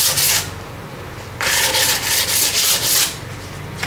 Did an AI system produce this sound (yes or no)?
no